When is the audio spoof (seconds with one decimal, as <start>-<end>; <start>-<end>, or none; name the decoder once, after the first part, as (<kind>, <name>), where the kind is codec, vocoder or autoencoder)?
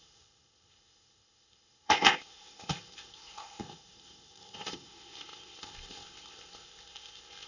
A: 0.0-7.5 (codec, ZipCodec)